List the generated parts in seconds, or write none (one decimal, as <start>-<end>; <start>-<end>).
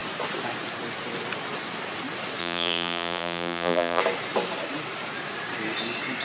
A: 2.4-4.0